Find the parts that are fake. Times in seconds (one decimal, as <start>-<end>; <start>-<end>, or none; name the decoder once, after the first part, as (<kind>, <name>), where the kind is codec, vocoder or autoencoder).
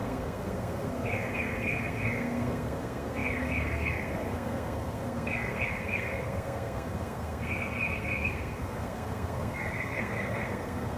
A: 0.0-11.0 (codec, SNAC)